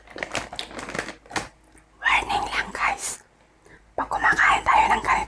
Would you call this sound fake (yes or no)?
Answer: no